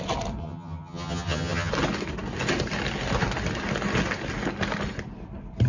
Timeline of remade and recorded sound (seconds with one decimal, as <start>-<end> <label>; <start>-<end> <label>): 0.0-0.4 recorded; 0.4-1.7 remade; 1.7-5.7 recorded